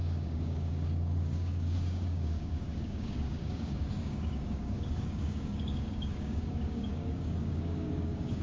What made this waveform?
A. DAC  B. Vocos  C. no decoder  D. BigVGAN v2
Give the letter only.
A